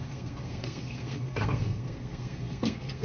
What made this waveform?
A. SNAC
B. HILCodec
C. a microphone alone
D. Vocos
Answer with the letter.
A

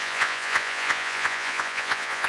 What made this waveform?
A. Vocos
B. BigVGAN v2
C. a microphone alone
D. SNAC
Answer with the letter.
A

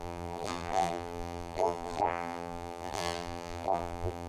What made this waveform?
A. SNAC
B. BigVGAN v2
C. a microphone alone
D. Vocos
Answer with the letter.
B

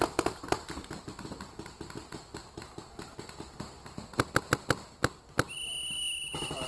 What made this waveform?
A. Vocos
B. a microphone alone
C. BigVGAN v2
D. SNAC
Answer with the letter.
B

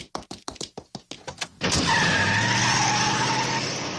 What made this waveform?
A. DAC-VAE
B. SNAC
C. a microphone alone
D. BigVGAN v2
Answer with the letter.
C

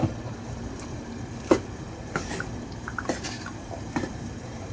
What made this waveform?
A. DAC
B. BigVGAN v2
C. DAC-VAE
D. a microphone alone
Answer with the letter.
B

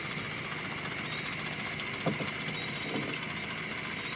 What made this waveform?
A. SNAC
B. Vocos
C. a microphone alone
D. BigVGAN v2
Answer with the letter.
C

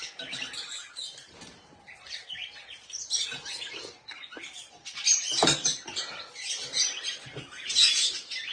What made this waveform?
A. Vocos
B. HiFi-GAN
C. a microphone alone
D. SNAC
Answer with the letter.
C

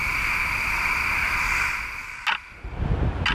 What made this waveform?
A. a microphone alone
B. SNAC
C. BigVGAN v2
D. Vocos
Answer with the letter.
A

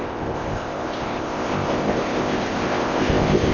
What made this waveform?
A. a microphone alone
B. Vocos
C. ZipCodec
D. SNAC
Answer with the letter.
C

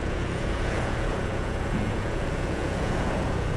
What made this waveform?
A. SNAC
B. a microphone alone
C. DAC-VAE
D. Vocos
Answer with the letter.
D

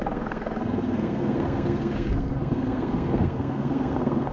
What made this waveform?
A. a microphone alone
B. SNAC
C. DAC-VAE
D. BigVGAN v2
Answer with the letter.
B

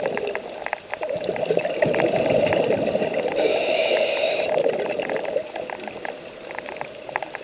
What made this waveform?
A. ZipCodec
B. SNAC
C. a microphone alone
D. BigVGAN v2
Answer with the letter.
D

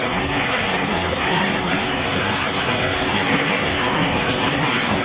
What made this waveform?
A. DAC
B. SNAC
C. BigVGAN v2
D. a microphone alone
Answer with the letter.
B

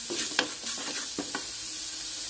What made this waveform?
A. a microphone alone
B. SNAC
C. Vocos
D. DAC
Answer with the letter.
A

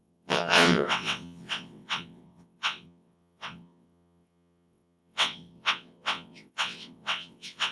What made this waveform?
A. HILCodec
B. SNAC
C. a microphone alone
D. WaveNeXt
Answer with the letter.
D